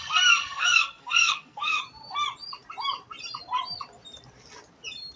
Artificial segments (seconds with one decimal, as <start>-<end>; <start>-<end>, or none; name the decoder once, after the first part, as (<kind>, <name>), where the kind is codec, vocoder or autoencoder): 0.0-1.8 (codec, SNAC)